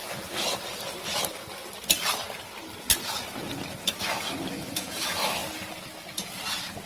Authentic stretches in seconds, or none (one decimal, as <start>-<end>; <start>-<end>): 0.0-3.9; 5.4-6.9